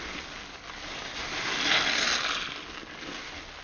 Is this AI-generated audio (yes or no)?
no